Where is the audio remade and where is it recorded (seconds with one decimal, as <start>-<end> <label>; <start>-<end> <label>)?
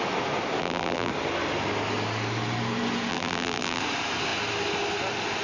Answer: 0.0-0.6 recorded; 0.6-1.1 remade; 1.1-3.1 recorded; 3.1-3.8 remade; 3.8-5.4 recorded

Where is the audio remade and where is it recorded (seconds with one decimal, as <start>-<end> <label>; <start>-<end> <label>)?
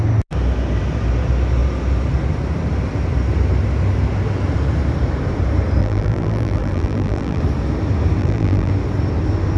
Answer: 0.0-5.8 recorded; 5.8-7.4 remade; 7.4-8.2 recorded; 8.2-8.7 remade; 8.7-9.6 recorded